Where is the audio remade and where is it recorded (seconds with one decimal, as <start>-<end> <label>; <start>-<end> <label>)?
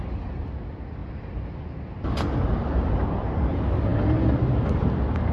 0.0-5.3 recorded